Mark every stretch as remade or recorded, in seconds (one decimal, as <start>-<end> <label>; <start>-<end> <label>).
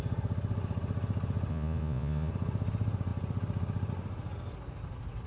0.0-1.5 recorded; 1.5-2.3 remade; 2.3-5.3 recorded